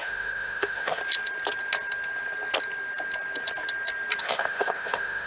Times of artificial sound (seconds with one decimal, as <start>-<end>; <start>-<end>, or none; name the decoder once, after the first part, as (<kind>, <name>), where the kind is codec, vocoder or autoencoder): 0.0-1.0 (autoencoder, DAC-VAE); 4.2-5.3